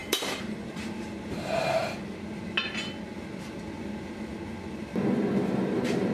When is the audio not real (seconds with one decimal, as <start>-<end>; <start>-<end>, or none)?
0.0-1.8; 5.5-6.1